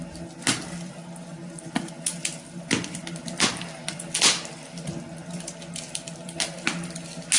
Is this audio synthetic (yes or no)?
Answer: no